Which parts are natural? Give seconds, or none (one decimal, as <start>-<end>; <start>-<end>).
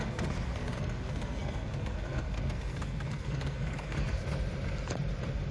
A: 4.2-5.5